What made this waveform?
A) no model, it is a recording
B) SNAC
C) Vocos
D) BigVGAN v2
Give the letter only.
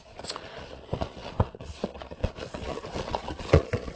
C